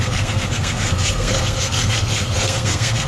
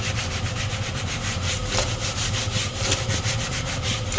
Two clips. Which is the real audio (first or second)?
second